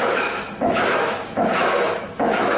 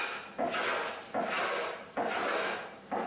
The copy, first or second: first